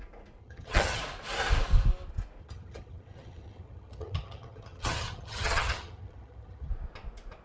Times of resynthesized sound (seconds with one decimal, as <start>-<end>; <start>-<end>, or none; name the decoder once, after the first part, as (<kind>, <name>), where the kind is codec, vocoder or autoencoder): 0.4-1.0 (vocoder, HiFi-GAN); 2.4-6.7